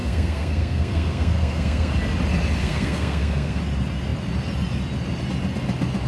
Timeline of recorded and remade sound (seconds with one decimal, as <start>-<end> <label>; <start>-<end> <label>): 0.0-1.9 remade; 1.9-2.6 recorded; 2.6-3.6 remade; 3.6-6.1 recorded